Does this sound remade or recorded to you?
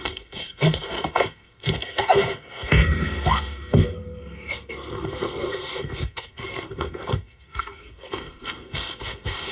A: remade